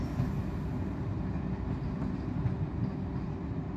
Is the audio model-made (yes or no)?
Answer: no